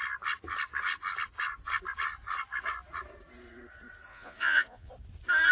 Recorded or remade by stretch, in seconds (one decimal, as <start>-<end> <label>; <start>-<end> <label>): 0.0-4.1 recorded; 4.1-4.9 remade; 4.9-5.5 recorded